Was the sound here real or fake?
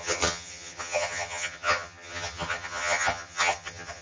fake